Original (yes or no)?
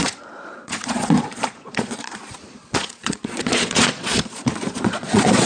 no